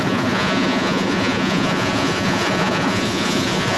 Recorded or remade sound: remade